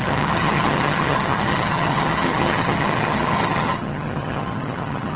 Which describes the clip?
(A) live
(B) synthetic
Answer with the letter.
B